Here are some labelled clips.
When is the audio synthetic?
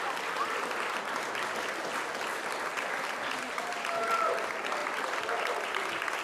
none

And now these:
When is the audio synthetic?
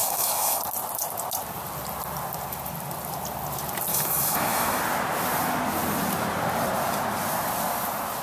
0.0-0.6 (autoencoder, DAC-VAE); 3.9-4.8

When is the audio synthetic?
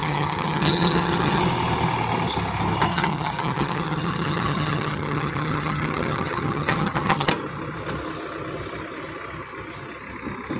0.0-1.4 (vocoder, HiFi-GAN); 2.9-7.3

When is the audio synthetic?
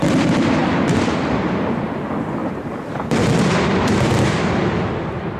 0.6-1.4 (vocoder, BigVGAN v2); 2.4-4.9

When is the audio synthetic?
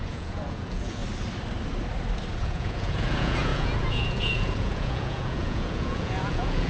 0.0-1.0 (vocoder, Vocos); 2.4-6.7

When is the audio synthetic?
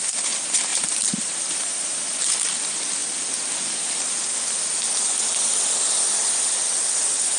0.7-2.4 (vocoder, BigVGAN v2)